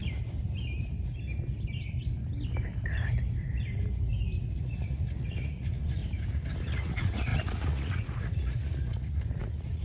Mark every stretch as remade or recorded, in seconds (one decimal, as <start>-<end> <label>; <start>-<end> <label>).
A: 0.0-4.4 recorded; 4.4-6.0 remade; 6.0-6.6 recorded; 6.6-9.8 remade